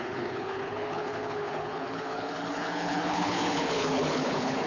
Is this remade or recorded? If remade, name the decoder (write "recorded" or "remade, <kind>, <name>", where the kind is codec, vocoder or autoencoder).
remade, codec, HILCodec